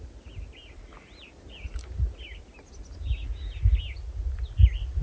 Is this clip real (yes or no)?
yes